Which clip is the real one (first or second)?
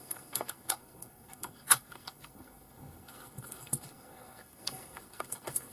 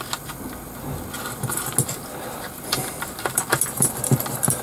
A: second